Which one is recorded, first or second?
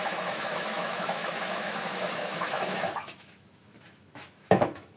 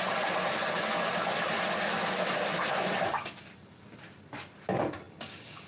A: second